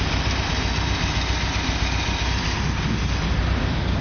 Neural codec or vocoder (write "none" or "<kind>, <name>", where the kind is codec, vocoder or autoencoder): none